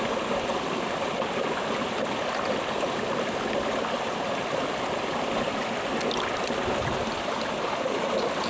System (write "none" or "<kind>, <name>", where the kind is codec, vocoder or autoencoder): none